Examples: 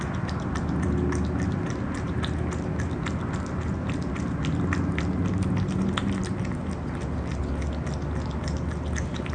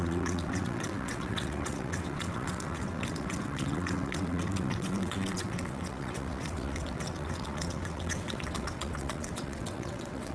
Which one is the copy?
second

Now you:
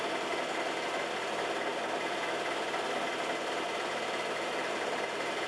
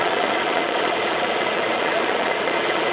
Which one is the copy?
second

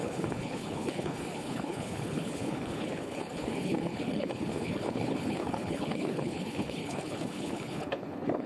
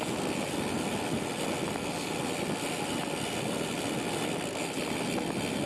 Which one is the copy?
first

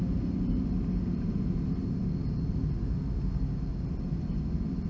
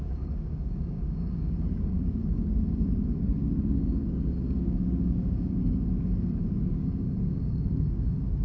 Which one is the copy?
second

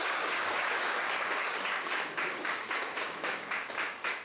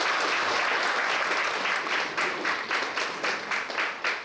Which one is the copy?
first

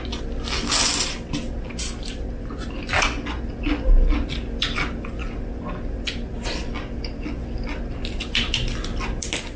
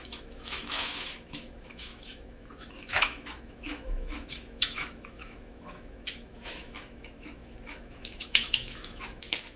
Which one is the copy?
second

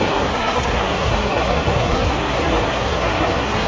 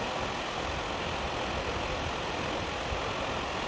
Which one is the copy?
first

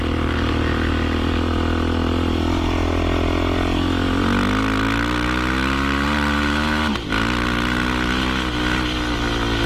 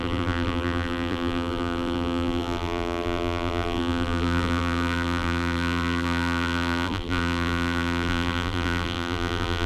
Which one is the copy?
second